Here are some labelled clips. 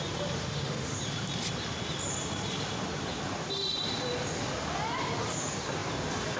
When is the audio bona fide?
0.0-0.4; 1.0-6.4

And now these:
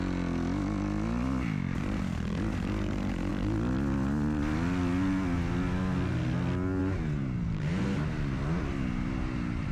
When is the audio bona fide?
0.0-9.7

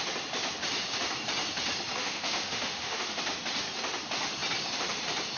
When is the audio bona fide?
0.0-2.0; 3.2-5.4

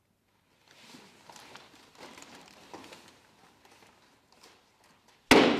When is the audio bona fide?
0.0-5.6

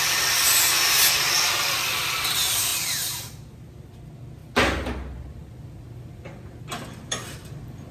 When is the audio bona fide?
0.0-7.9